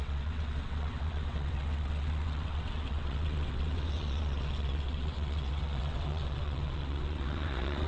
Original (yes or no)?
no